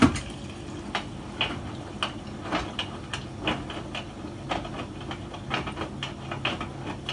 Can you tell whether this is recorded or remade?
recorded